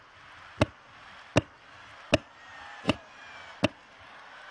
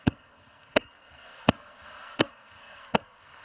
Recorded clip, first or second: first